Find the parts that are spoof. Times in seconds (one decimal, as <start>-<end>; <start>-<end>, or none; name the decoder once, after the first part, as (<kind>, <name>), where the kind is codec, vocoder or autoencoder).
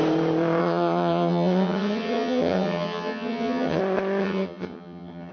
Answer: 0.6-3.8 (vocoder, HiFi-GAN); 4.2-5.3